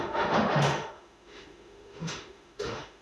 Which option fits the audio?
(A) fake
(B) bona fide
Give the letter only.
A